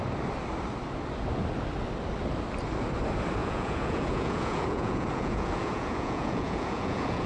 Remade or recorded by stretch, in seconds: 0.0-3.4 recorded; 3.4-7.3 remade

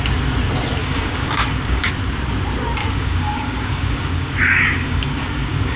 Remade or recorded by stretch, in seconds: 0.0-0.8 recorded; 0.8-1.9 remade; 1.9-2.8 recorded; 2.8-5.8 remade

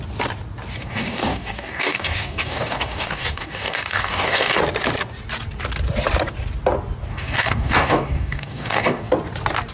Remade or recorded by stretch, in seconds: 0.0-0.7 recorded; 0.7-4.6 remade; 4.6-7.1 recorded; 7.1-9.1 remade; 9.1-9.7 recorded

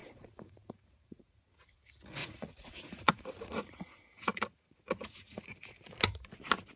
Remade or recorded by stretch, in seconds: 0.0-1.8 remade; 1.8-2.2 recorded; 2.2-5.8 remade; 5.8-6.8 recorded

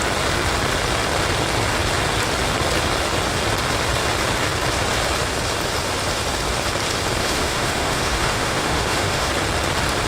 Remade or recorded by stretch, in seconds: 0.0-7.2 recorded; 7.2-9.3 remade; 9.3-10.1 recorded

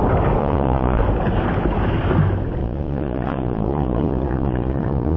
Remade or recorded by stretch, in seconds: 0.0-0.4 recorded; 0.4-1.0 remade; 1.0-2.6 recorded; 2.6-5.2 remade

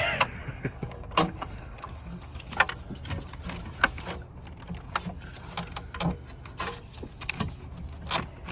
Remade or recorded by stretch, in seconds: 0.0-0.4 recorded; 0.4-2.5 remade; 2.5-6.7 recorded; 6.7-7.6 remade; 7.6-8.5 recorded

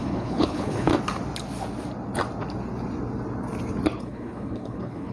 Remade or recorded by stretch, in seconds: 0.0-0.9 remade; 0.9-4.0 recorded; 4.0-5.1 remade